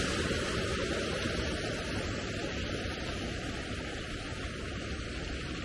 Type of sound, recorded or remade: recorded